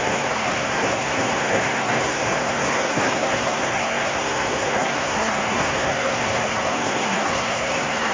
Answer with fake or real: fake